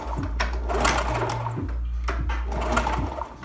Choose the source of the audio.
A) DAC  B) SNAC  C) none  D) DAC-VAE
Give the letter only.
C